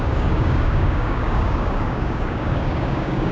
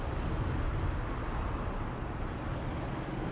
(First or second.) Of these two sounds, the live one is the second